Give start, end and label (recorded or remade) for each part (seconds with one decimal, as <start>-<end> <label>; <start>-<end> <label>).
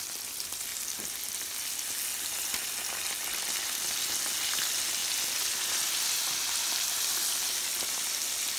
0.0-0.7 remade; 0.7-4.6 recorded; 4.6-5.0 remade; 5.0-5.7 recorded; 5.7-8.6 remade